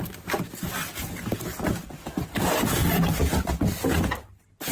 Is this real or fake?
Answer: real